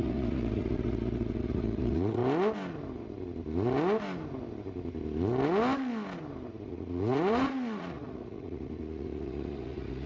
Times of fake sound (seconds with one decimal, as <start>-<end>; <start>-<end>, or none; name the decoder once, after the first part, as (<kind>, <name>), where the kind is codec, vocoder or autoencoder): 0.0-2.2 (vocoder, Vocos); 6.7-10.1